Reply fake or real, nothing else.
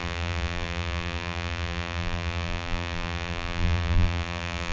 fake